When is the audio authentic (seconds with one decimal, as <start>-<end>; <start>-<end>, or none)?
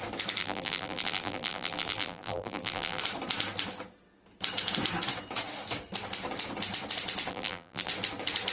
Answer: 0.0-0.4; 3.0-7.3; 7.9-8.5